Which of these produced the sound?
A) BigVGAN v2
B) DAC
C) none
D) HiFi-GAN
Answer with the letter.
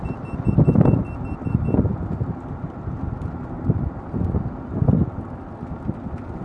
C